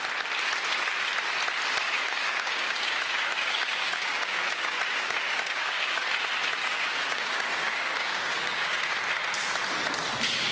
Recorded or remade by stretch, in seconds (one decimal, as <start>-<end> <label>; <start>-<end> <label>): 0.0-1.8 recorded; 1.8-6.1 remade; 6.1-6.6 recorded; 6.6-8.9 remade; 8.9-10.5 recorded